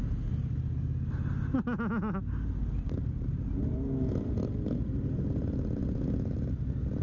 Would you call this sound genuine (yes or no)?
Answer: yes